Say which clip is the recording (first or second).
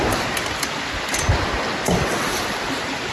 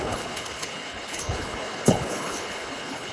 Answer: first